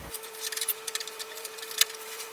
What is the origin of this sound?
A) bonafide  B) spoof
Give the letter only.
B